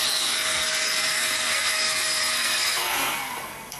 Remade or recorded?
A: remade